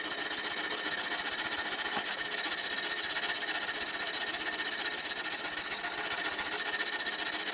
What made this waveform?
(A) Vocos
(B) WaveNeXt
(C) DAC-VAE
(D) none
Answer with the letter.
D